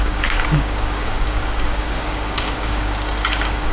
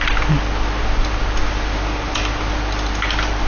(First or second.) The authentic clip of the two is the second